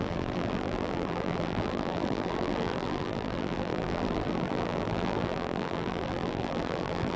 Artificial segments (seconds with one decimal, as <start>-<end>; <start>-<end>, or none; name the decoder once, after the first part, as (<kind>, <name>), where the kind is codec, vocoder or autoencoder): 0.0-7.2 (vocoder, BigVGAN v2)